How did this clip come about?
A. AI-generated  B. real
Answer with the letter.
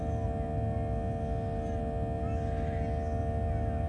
B